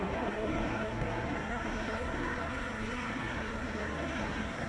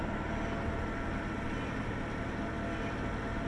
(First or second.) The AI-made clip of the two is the first